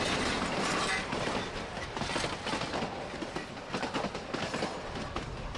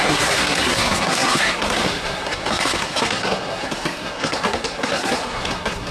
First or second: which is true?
first